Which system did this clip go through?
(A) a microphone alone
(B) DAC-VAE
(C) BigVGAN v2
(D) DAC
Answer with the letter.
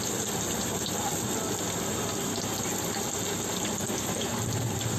A